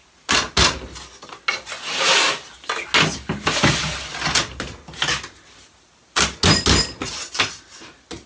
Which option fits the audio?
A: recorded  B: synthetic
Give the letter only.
A